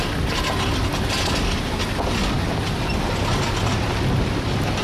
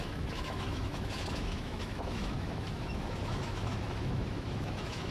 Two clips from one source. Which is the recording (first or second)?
first